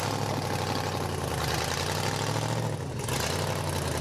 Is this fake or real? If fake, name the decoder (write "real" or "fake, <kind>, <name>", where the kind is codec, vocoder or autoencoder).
real